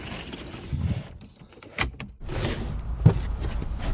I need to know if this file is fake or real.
real